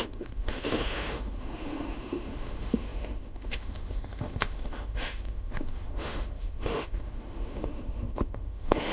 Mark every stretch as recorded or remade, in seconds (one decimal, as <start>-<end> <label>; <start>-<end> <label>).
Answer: 0.0-8.9 remade